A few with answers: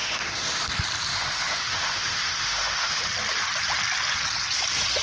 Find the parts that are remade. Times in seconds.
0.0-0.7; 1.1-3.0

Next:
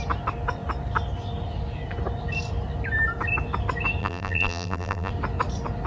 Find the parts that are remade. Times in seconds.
4.0-5.1

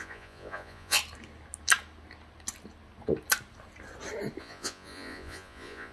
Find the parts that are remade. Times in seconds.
0.0-1.0; 4.4-5.9

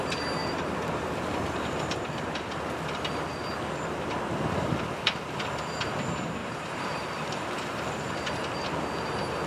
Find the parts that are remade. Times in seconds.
0.4-2.6; 6.4-8.1

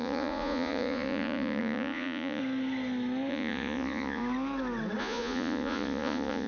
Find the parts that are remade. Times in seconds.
0.0-2.4; 3.3-4.2; 5.0-6.5

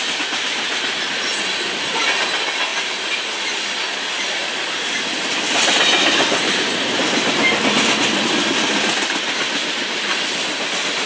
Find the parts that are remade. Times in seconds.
1.3-2.0; 2.7-3.3; 4.4-7.2

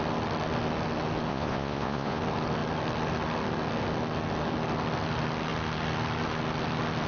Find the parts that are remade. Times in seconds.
1.3-2.2

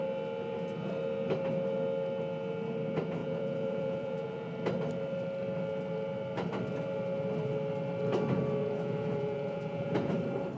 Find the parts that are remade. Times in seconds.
3.2-4.5; 8.6-10.1